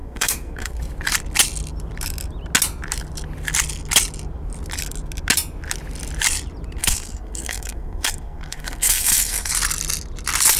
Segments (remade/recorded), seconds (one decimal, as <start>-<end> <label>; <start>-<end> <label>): 0.0-0.8 remade; 0.8-6.8 recorded; 6.8-9.5 remade; 9.5-10.6 recorded